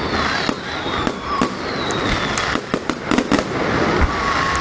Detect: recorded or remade recorded